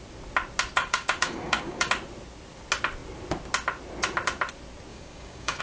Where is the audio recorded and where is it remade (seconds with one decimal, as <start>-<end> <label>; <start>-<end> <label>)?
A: 0.0-0.8 recorded; 0.8-1.9 remade; 1.9-4.9 recorded; 4.9-5.6 remade